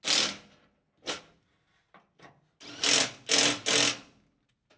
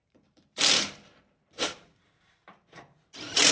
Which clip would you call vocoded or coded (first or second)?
second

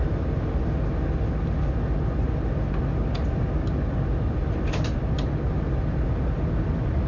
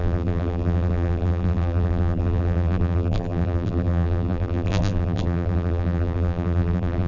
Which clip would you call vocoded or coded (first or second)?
second